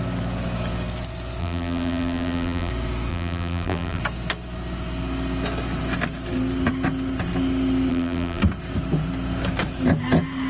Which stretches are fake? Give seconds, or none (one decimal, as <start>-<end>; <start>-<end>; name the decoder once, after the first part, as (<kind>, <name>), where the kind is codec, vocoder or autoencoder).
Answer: 1.4-2.7 (vocoder, BigVGAN v2); 3.1-4.0; 7.9-8.4